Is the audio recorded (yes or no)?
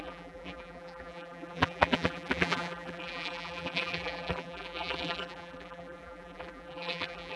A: no